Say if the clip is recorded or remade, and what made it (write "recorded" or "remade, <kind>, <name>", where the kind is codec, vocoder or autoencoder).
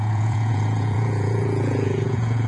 remade, vocoder, Vocos